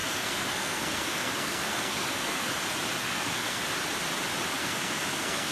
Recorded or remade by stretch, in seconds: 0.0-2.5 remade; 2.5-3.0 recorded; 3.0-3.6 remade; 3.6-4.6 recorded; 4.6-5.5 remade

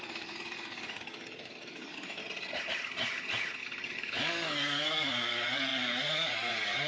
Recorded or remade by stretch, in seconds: 0.0-2.2 remade; 2.2-3.6 recorded; 3.6-6.9 remade

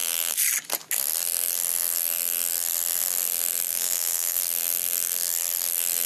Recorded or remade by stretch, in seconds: 0.0-3.7 recorded; 3.7-4.4 remade; 4.4-6.1 recorded